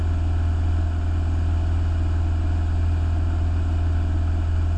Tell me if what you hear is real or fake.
real